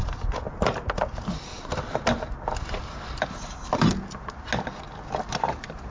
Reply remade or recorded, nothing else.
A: recorded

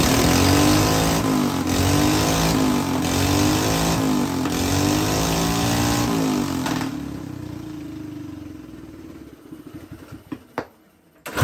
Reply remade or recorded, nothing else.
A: recorded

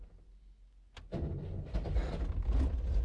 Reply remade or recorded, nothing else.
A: recorded